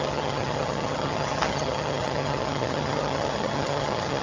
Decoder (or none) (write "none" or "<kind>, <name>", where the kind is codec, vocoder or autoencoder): vocoder, HiFi-GAN